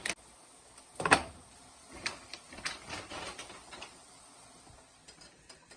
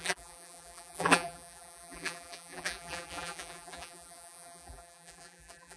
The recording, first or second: first